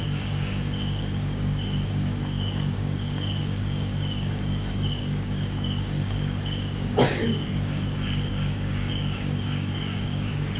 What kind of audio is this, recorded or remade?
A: remade